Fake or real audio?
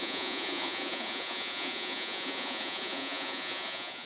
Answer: fake